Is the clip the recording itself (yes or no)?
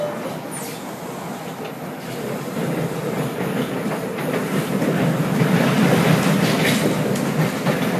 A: yes